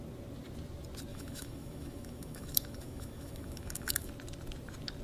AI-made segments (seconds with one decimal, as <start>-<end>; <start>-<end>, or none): 1.1-4.1